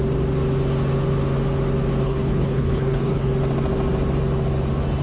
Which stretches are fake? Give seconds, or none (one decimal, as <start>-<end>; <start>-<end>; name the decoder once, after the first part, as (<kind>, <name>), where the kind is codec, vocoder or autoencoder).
2.0-3.3 (codec, HILCodec)